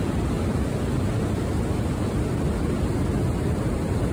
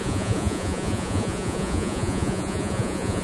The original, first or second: first